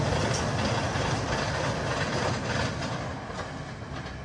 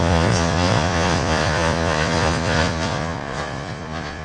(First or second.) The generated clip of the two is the second